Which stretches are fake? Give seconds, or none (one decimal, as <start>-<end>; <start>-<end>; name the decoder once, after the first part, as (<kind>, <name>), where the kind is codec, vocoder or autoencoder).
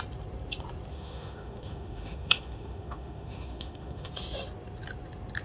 0.9-4.1 (autoencoder, DAC-VAE)